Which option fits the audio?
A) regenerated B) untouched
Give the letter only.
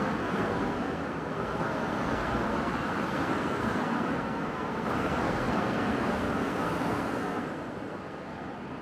A